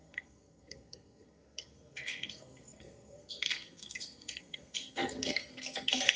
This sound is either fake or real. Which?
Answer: fake